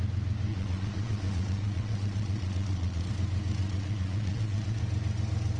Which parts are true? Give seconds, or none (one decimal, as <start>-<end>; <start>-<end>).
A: 0.0-0.5; 3.1-3.6; 4.8-5.6